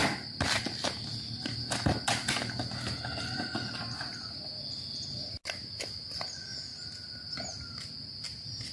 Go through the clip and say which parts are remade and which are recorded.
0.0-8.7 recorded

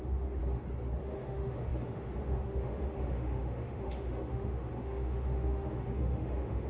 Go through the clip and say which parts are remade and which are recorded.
0.0-0.4 remade; 0.4-1.0 recorded; 1.0-6.7 remade

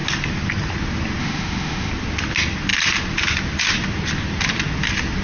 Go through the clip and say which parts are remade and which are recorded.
0.0-1.2 recorded; 1.2-1.9 remade; 1.9-5.2 recorded

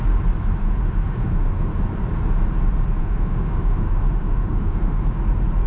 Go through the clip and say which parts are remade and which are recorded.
0.0-0.6 recorded; 0.6-1.8 remade; 1.8-3.0 recorded; 3.0-5.2 remade; 5.2-5.7 recorded

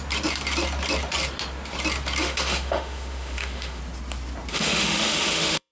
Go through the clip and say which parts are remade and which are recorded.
0.0-2.2 recorded; 2.2-3.8 remade; 3.8-4.5 recorded; 4.5-5.7 remade

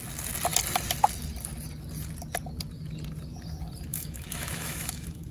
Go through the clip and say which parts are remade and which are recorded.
0.0-3.9 recorded; 3.9-5.3 remade